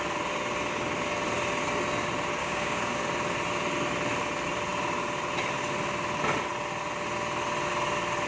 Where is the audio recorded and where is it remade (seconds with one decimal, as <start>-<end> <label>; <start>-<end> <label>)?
0.0-2.4 recorded; 2.4-2.9 remade; 2.9-8.3 recorded

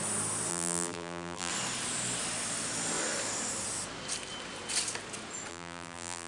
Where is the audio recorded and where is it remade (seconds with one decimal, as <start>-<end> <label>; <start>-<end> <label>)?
0.0-0.5 recorded; 0.5-1.5 remade; 1.5-5.5 recorded; 5.5-6.3 remade

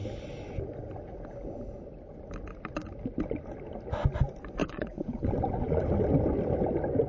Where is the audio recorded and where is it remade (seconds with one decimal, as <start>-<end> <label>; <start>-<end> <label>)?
0.0-4.6 recorded; 4.6-5.8 remade; 5.8-7.1 recorded

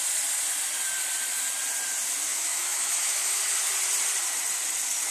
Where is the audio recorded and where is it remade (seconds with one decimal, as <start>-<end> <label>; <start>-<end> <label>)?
0.0-2.3 recorded; 2.3-3.4 remade; 3.4-5.1 recorded